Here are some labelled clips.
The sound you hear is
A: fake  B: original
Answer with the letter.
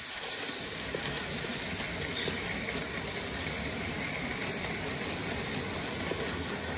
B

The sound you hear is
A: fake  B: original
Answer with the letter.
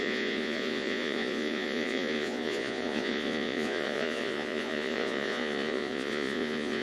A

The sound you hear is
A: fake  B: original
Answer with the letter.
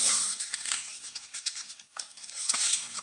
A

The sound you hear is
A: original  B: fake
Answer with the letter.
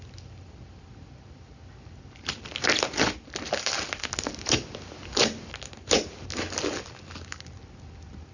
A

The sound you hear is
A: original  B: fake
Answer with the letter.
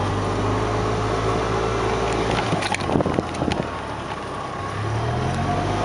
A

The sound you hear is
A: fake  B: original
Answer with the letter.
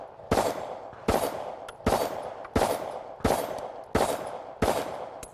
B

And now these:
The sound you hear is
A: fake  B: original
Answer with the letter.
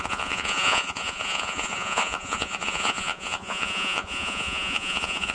A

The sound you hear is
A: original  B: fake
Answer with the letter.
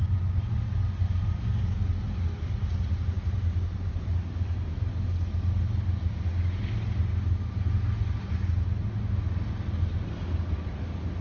A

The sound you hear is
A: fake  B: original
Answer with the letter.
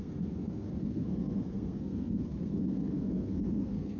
A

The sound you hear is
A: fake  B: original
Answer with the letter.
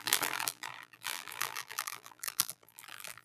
A